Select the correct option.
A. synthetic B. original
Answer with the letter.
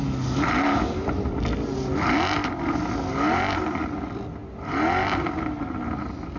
B